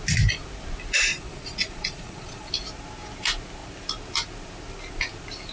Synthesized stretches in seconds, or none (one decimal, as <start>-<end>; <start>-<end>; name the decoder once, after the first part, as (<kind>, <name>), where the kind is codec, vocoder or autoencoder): 1.1-2.5 (vocoder, Vocos)